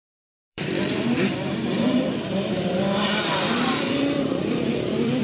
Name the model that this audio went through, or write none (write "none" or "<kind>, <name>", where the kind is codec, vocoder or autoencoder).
vocoder, BigVGAN v2